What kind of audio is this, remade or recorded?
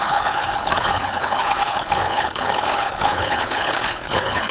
remade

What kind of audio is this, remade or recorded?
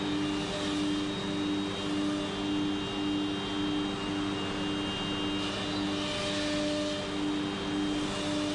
recorded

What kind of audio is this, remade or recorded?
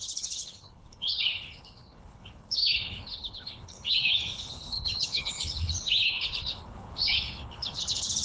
remade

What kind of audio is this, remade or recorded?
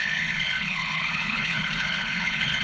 remade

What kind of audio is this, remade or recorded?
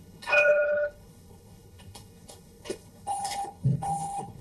remade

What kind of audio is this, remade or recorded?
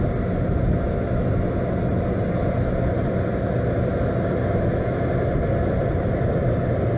recorded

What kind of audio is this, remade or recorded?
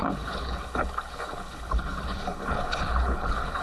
remade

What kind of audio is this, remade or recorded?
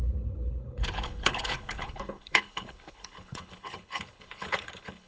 remade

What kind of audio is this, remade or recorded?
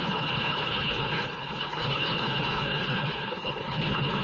remade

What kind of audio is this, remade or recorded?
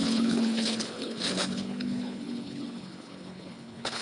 remade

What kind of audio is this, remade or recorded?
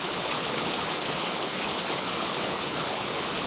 remade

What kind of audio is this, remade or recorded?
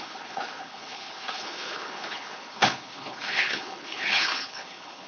remade